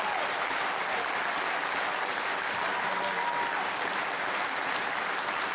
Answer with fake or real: real